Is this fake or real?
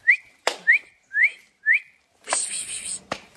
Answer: fake